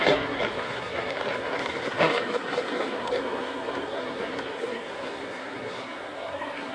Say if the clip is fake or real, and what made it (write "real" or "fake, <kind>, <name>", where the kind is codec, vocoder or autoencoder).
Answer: fake, codec, SNAC